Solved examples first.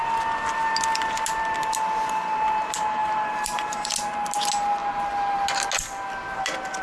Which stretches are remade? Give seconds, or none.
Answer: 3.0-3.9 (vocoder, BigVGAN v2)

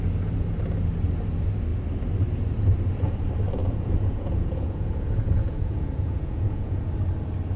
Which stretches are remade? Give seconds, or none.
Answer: 3.6-6.9 (vocoder, Vocos)

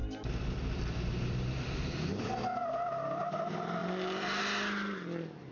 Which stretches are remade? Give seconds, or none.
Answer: 0.0-2.1 (vocoder, BigVGAN v2); 2.6-3.2; 3.8-4.4